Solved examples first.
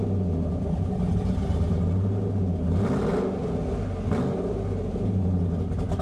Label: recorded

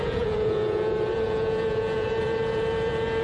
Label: remade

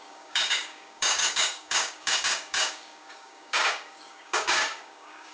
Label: remade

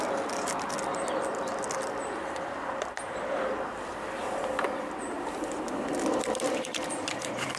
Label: remade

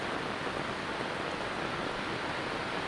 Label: recorded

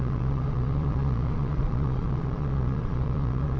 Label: remade